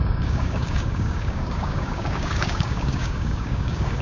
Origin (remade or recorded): remade